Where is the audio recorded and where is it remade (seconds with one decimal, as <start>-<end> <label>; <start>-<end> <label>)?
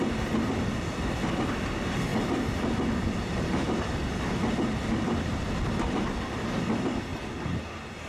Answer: 0.0-2.1 recorded; 2.1-5.4 remade; 5.4-7.1 recorded; 7.1-8.1 remade